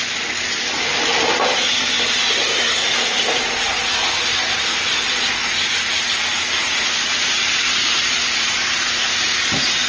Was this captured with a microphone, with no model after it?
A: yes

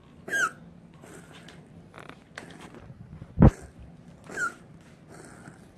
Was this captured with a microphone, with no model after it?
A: yes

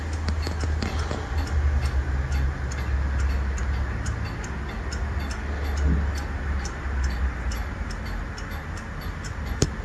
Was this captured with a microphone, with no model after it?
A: yes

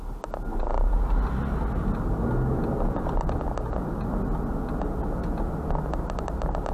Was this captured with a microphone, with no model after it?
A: yes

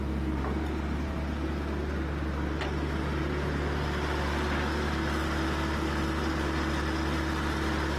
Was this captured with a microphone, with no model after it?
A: yes